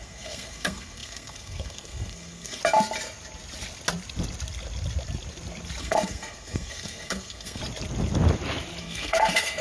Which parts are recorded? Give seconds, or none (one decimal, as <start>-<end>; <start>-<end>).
2.6-5.8; 7.6-8.8